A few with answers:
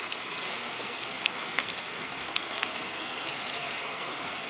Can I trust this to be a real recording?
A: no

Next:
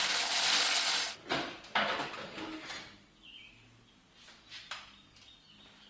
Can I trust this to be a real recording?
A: yes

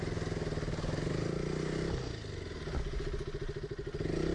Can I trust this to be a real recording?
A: yes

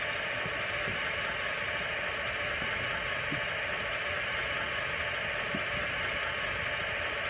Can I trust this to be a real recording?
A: yes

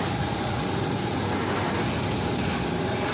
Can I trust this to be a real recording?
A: yes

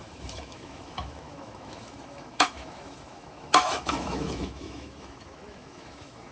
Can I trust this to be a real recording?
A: no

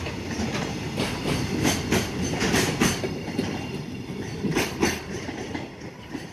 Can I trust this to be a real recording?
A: yes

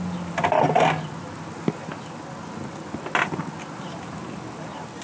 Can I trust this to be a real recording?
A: yes